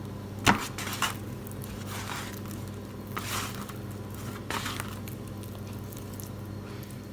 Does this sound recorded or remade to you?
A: recorded